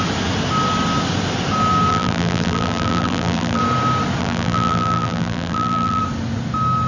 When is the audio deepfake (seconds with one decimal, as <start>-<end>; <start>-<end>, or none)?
1.9-3.6; 4.2-6.0